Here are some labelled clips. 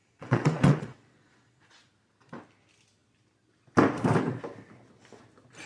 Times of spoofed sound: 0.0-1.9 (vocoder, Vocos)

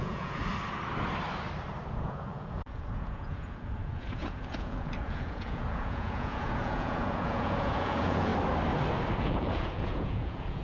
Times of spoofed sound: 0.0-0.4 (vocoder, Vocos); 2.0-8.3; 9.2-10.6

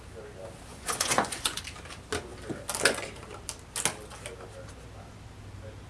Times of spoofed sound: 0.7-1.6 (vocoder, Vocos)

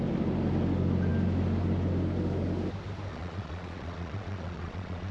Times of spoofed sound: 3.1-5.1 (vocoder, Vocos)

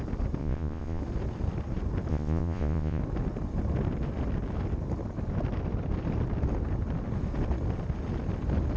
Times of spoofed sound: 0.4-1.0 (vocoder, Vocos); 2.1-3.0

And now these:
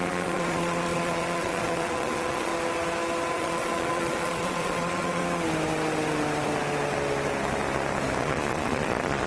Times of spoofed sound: 0.0-2.5 (vocoder, Vocos); 3.3-5.2; 8.2-9.3

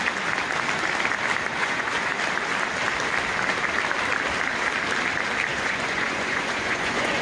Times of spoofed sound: 1.5-2.1 (vocoder, Vocos); 5.5-7.2